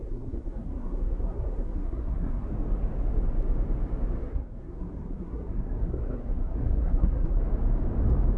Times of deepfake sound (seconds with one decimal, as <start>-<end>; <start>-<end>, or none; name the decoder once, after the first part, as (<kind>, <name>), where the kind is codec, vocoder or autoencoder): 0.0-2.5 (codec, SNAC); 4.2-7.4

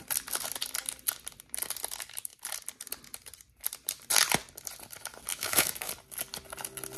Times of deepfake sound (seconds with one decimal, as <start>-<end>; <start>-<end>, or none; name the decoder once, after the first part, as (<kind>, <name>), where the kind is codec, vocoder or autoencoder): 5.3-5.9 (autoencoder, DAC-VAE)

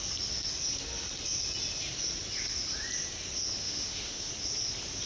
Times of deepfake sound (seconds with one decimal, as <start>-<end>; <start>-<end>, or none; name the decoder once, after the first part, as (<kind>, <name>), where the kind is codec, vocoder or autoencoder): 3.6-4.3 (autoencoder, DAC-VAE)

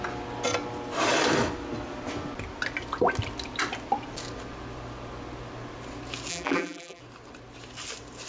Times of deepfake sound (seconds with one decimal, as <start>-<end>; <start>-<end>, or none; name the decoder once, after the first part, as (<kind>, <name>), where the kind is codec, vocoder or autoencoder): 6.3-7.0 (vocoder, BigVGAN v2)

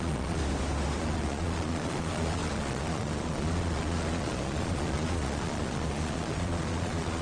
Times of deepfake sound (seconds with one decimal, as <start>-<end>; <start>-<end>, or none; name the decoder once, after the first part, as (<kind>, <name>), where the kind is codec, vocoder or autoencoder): 0.0-0.4 (vocoder, Vocos); 1.0-7.2